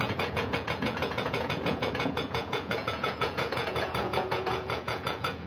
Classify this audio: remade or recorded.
remade